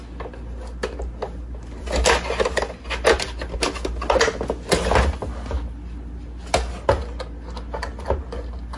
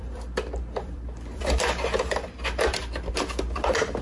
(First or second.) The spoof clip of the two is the second